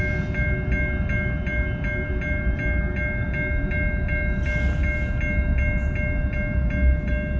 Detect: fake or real real